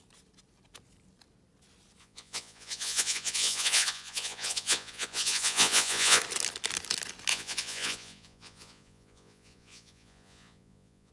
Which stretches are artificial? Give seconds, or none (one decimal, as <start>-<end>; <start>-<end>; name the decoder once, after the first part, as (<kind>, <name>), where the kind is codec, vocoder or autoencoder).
2.0-6.2 (vocoder, Vocos); 7.3-11.1

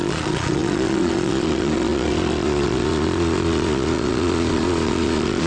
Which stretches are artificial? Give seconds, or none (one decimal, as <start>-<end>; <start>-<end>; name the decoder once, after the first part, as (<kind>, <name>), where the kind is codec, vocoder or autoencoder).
0.0-5.5 (vocoder, Vocos)

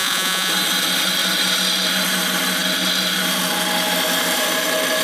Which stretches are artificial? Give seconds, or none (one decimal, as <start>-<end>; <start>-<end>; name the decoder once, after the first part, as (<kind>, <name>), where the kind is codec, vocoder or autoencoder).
0.0-0.5 (vocoder, Vocos)

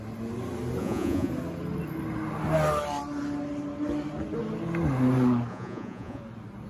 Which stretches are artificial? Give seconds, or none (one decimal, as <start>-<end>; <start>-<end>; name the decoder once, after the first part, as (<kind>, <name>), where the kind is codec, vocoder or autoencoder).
0.8-1.3 (vocoder, Vocos); 5.5-6.2